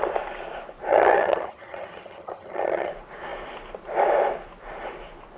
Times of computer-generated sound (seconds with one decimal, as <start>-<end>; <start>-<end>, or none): 0.9-2.9